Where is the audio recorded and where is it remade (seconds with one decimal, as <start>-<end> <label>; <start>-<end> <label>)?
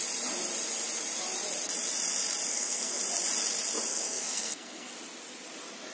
0.0-2.5 recorded; 2.5-3.0 remade; 3.0-3.9 recorded; 3.9-4.9 remade; 4.9-5.9 recorded